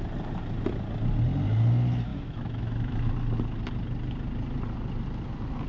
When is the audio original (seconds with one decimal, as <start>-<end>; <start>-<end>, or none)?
0.0-2.1; 3.1-5.7